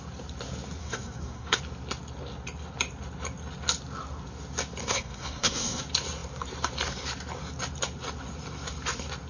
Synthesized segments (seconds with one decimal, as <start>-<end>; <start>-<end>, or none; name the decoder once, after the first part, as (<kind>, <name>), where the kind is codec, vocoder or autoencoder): 0.8-1.6 (codec, SNAC); 4.8-5.8